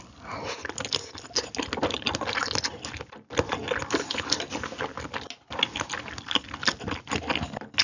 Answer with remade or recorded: recorded